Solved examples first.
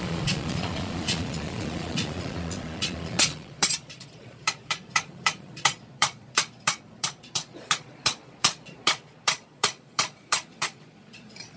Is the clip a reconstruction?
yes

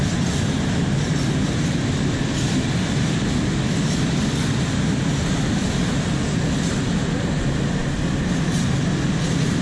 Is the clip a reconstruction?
no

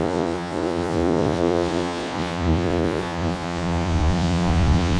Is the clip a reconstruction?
yes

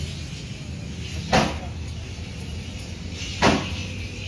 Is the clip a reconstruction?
no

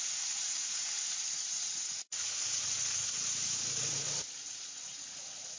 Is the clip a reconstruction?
yes